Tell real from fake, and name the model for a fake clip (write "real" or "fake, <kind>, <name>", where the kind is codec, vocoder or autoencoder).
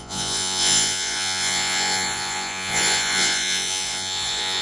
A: fake, vocoder, Vocos